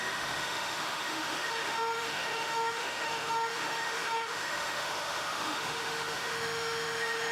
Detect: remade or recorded remade